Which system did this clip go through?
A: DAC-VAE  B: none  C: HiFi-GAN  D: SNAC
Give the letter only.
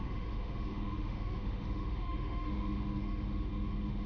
A